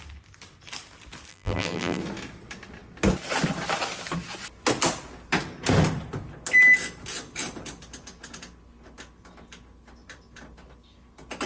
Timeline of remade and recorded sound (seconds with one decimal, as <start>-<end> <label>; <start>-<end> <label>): 0.0-1.3 recorded; 1.3-2.0 remade; 2.0-11.5 recorded